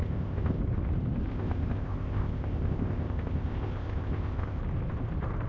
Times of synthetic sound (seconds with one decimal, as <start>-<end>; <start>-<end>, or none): 0.0-0.6; 1.3-4.6